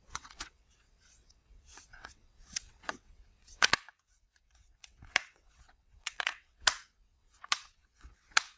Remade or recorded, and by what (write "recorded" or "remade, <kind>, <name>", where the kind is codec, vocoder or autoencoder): remade, vocoder, WaveNeXt